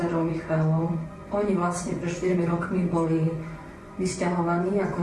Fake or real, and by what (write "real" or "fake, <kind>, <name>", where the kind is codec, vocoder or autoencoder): fake, vocoder, Vocos